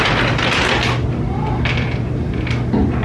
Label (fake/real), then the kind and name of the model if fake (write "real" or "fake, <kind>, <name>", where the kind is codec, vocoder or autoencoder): real